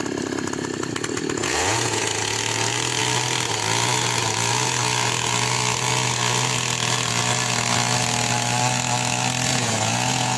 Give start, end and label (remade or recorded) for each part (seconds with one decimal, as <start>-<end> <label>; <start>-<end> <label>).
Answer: 0.0-1.4 recorded; 1.4-2.4 remade; 2.4-9.5 recorded; 9.5-10.4 remade